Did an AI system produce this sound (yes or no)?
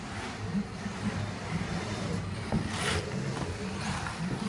no